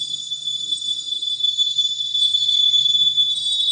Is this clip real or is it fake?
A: fake